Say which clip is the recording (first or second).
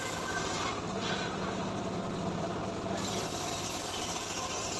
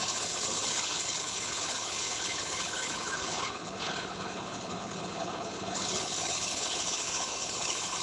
first